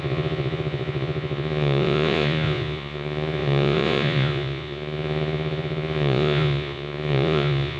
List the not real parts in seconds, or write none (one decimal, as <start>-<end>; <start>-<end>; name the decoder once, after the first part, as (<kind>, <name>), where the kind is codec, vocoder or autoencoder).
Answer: 0.0-7.8 (vocoder, Vocos)